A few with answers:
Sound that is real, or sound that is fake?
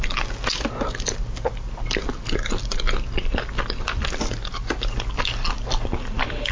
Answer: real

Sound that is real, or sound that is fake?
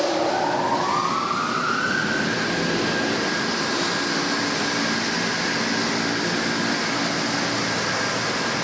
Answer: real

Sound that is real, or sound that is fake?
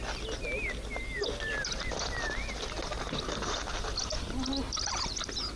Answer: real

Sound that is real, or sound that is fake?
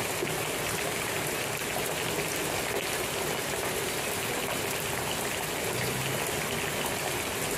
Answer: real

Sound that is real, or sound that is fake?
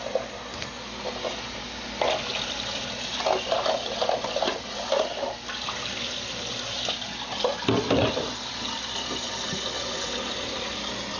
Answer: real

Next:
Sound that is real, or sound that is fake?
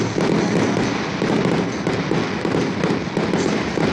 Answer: real